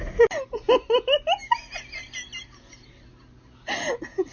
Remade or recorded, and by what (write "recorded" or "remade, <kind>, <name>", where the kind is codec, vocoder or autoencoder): recorded